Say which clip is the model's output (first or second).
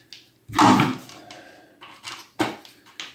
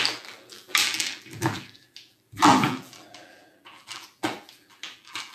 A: second